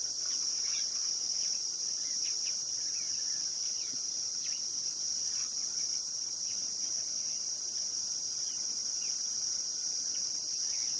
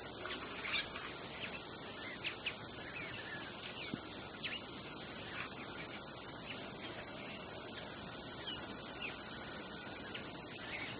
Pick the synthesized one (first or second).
first